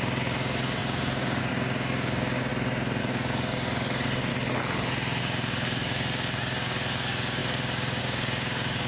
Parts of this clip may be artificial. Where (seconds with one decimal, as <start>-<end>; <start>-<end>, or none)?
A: 0.0-2.5; 3.0-4.3; 5.2-8.9